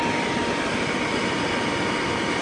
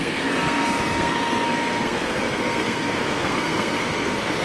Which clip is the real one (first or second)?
first